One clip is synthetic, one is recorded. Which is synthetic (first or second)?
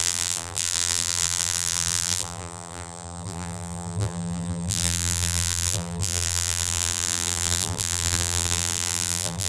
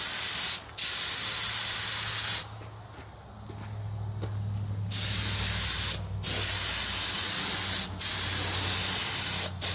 first